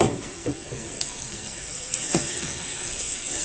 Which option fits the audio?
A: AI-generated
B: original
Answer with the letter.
A